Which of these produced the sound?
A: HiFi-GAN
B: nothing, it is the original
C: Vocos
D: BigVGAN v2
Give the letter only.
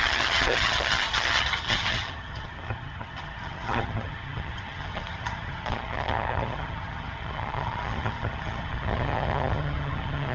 A